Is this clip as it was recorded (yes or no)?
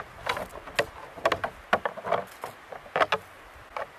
yes